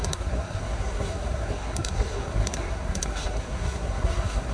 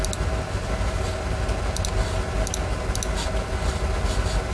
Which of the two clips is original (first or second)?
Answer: second